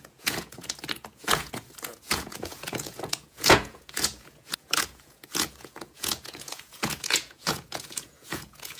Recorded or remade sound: remade